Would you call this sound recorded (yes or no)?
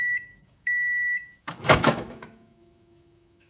no